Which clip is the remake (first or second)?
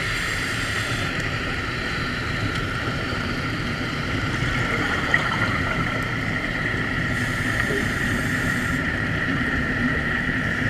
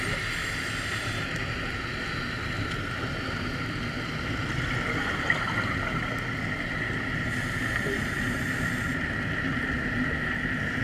first